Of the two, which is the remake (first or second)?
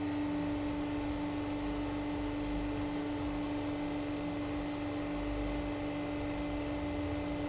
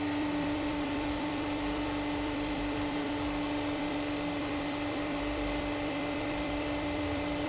second